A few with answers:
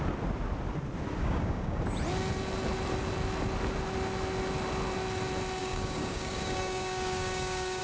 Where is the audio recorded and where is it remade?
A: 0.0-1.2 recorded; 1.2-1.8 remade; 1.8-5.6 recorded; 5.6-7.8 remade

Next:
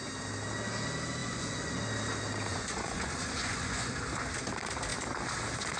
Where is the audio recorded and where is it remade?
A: 0.0-1.2 recorded; 1.2-1.8 remade; 1.8-2.5 recorded; 2.5-3.9 remade; 3.9-5.8 recorded

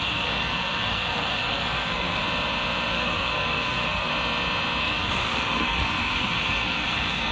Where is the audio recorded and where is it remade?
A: 0.0-2.2 remade; 2.2-2.9 recorded; 2.9-4.1 remade; 4.1-4.8 recorded; 4.8-7.3 remade

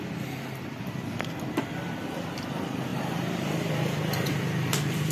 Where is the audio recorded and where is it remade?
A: 0.0-2.9 recorded; 2.9-3.7 remade; 3.7-5.1 recorded